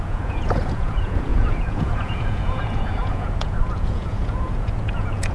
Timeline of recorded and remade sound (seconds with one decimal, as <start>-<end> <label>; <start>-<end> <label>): 0.0-5.3 remade